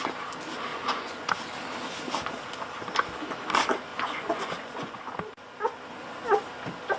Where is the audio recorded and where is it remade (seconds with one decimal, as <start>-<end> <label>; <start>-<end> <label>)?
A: 0.0-0.7 recorded; 0.7-1.3 remade; 1.3-3.9 recorded; 3.9-5.0 remade; 5.0-7.0 recorded